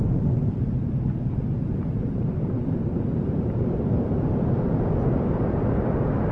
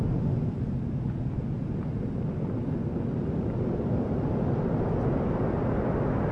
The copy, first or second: first